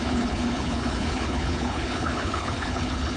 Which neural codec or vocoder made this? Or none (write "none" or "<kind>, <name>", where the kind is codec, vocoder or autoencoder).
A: codec, HILCodec